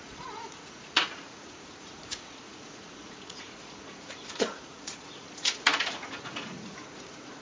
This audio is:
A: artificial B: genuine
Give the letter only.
A